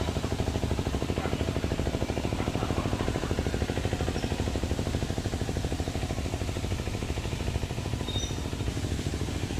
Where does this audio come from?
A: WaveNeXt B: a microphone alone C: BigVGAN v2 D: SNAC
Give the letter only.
B